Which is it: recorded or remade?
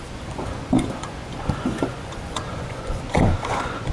remade